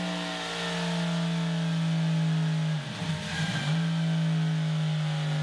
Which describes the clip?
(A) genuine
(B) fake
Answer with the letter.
A